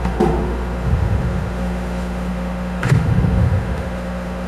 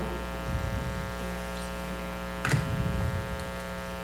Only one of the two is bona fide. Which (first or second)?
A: second